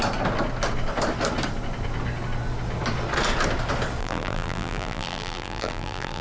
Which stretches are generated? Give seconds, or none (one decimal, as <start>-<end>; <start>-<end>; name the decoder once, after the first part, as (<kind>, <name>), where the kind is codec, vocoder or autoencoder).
4.0-6.2 (vocoder, BigVGAN v2)